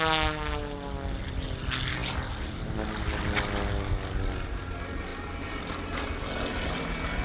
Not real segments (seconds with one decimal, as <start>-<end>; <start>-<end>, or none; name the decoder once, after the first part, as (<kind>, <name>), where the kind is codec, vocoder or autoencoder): none